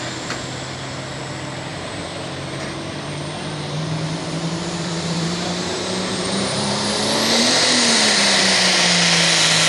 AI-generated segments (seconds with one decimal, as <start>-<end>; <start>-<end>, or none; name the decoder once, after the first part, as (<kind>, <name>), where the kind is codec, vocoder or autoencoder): 1.7-6.9 (vocoder, BigVGAN v2)